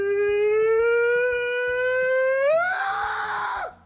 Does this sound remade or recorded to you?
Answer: recorded